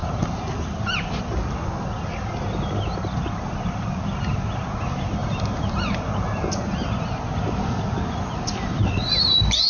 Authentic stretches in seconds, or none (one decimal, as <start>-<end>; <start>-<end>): 0.0-5.2; 6.0-9.7